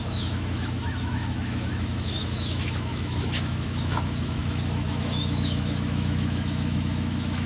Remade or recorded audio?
remade